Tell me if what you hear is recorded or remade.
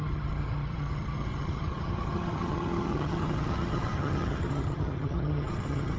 remade